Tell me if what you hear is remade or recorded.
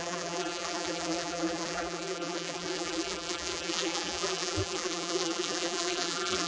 remade